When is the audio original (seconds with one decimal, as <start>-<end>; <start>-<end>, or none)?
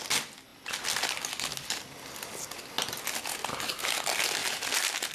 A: 0.0-4.4